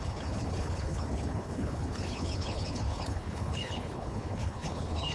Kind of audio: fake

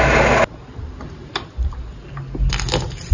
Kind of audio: real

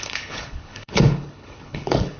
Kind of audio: fake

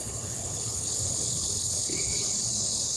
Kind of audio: fake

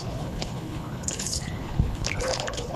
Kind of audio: fake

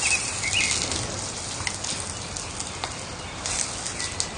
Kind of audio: real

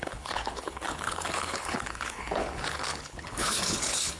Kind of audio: fake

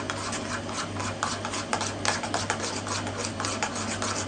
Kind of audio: real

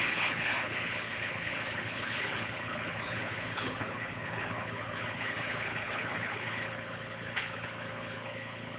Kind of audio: fake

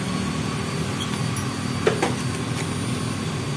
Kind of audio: real